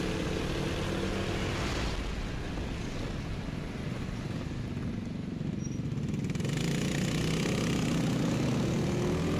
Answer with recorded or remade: recorded